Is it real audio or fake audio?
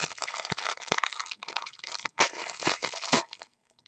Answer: fake